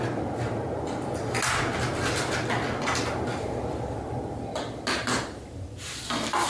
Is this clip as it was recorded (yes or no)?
yes